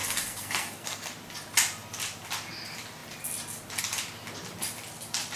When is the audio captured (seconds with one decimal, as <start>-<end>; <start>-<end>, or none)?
1.1-5.4